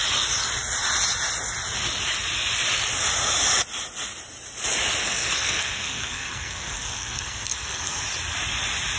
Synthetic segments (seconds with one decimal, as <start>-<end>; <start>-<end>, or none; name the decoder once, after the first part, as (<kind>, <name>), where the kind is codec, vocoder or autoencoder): 5.0-8.0 (codec, SNAC)